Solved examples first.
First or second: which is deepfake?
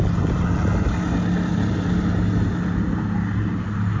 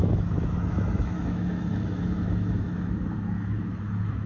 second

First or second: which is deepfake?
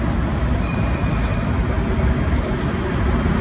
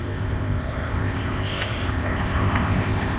second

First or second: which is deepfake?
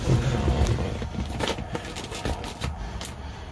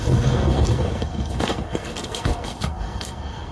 second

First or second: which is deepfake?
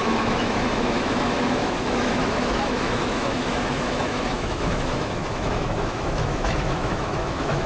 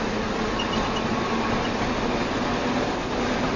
first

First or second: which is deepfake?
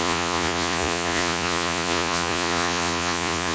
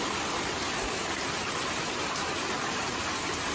first